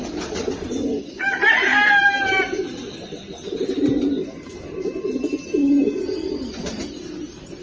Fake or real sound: real